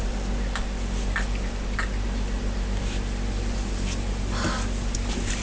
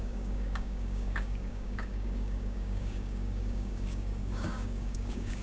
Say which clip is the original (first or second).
first